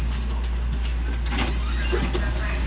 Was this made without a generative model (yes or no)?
yes